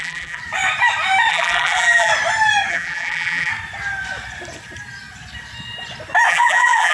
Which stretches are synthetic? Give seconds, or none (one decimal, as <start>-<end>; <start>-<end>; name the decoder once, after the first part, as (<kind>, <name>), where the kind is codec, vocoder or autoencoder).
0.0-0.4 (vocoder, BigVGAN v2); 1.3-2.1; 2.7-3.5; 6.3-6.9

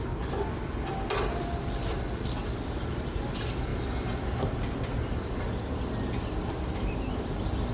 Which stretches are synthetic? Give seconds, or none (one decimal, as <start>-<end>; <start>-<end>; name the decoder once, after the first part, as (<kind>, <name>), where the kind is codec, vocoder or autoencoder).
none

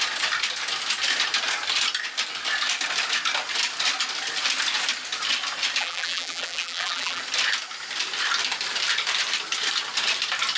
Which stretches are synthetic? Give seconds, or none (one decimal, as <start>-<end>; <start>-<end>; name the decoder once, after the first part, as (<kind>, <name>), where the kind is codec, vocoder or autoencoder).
5.8-7.2 (vocoder, BigVGAN v2)